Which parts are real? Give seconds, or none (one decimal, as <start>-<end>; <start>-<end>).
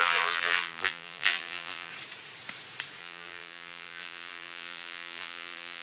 1.9-3.0